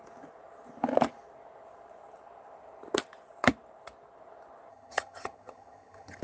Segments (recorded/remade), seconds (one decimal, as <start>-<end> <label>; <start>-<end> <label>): 0.0-4.7 recorded; 4.7-6.2 remade